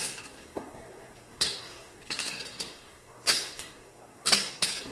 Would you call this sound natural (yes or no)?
no